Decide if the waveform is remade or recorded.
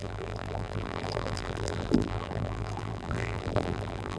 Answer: remade